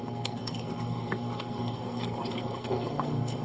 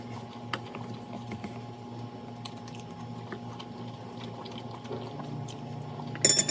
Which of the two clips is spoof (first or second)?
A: first